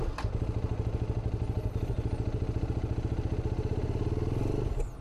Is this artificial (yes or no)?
no